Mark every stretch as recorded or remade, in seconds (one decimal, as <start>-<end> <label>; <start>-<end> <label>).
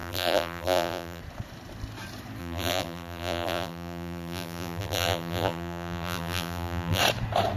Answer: 0.0-1.2 remade; 1.2-2.4 recorded; 2.4-7.0 remade; 7.0-7.6 recorded